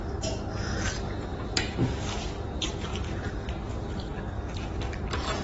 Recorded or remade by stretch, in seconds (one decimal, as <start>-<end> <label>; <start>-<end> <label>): 0.0-1.3 recorded; 1.3-2.2 remade; 2.2-2.9 recorded; 2.9-3.7 remade; 3.7-5.4 recorded